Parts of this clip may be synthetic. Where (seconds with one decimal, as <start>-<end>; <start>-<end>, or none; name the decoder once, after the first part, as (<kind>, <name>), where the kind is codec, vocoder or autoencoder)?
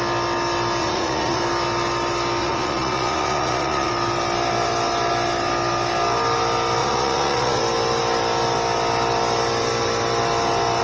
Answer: 0.8-1.4 (vocoder, Vocos); 2.4-3.9; 6.8-7.6